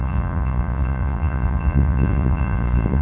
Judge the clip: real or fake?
fake